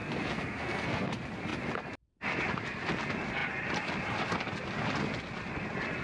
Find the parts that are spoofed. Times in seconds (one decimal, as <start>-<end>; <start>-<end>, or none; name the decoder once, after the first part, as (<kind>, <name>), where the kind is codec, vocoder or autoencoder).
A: 0.0-1.1 (codec, SNAC)